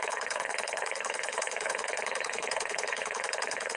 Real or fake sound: fake